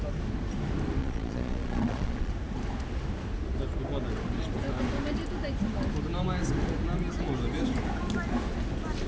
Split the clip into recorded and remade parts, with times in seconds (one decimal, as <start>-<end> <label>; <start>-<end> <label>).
0.0-1.0 recorded; 1.0-2.3 remade; 2.3-9.1 recorded